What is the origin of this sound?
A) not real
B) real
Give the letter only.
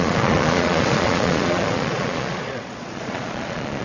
A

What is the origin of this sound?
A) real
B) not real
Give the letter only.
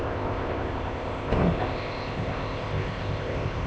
B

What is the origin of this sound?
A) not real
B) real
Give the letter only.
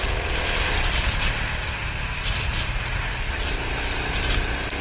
B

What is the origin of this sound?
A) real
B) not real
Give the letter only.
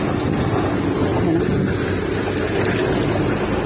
A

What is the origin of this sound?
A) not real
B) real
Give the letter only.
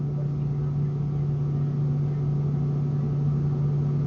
B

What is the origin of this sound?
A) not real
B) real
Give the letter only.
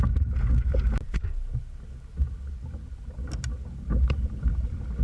B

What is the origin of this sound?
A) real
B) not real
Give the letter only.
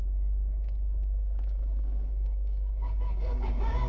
B